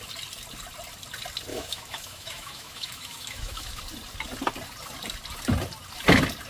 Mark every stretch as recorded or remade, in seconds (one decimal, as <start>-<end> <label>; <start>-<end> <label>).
0.0-1.5 recorded; 1.5-3.8 remade; 3.8-6.5 recorded